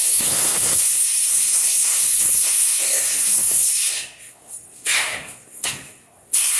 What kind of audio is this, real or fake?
fake